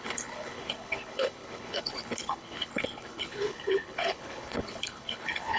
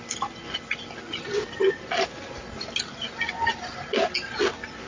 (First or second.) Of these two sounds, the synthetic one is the first